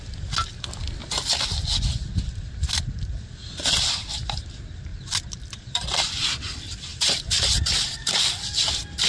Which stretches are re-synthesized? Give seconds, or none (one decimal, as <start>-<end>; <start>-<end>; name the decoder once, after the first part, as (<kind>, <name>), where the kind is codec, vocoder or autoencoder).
1.0-3.5 (vocoder, BigVGAN v2); 4.9-6.0; 6.9-7.6